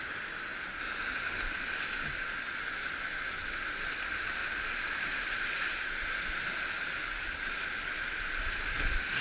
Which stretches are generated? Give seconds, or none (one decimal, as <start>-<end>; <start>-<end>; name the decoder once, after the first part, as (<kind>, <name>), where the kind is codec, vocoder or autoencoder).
none

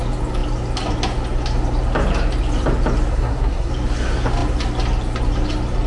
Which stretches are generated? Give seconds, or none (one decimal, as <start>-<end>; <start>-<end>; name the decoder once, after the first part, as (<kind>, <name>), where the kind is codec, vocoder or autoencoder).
3.1-3.7 (codec, SNAC)

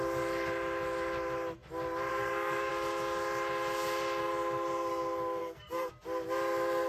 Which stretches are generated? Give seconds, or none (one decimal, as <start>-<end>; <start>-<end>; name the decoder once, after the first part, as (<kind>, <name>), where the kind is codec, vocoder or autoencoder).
2.1-2.7 (codec, SNAC); 5.4-5.9